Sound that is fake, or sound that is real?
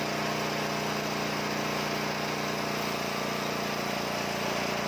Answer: real